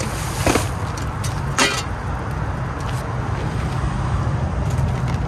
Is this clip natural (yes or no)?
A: yes